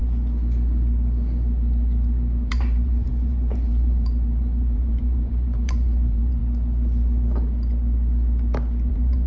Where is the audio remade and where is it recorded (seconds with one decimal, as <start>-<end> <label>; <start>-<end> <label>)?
0.0-2.5 recorded; 2.5-6.4 remade; 6.4-8.9 recorded; 8.9-9.3 remade